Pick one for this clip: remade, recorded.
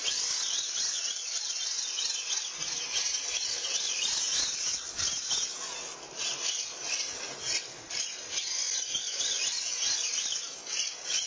recorded